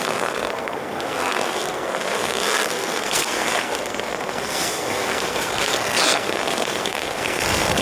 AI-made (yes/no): yes